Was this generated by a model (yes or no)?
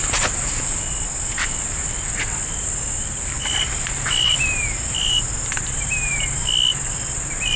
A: no